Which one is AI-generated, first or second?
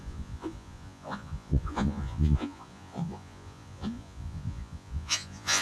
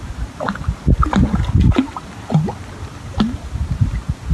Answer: first